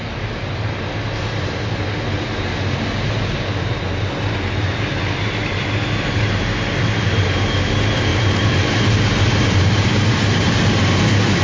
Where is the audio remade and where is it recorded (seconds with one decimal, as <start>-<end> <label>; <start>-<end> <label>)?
0.0-8.1 recorded; 8.1-10.8 remade; 10.8-11.4 recorded